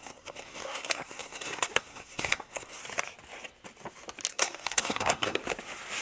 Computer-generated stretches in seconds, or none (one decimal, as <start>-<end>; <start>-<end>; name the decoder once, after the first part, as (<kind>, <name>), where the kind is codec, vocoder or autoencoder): 0.0-2.8 (codec, SNAC); 4.3-5.4